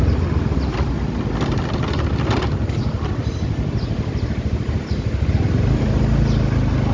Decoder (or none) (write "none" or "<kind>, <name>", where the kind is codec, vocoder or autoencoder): none